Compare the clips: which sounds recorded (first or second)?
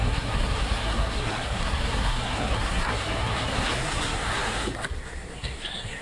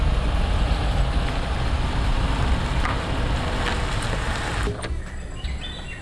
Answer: second